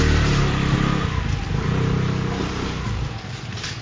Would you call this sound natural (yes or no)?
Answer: yes